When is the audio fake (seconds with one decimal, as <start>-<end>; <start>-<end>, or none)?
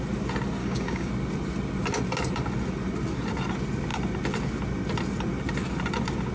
0.6-1.1